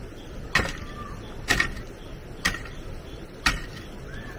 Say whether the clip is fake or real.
real